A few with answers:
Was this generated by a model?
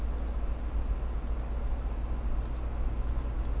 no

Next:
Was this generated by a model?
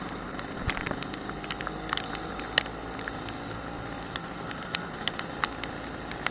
no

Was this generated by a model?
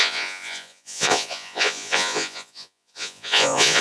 yes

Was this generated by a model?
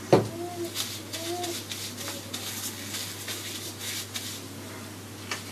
no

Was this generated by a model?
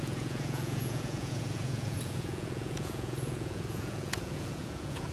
yes